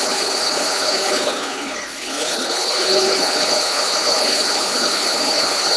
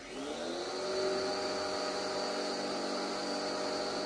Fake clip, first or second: first